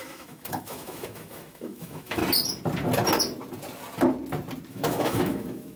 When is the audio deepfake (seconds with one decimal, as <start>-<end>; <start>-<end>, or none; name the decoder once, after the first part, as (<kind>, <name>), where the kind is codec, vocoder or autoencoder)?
0.0-2.2 (autoencoder, DAC-VAE); 4.7-5.8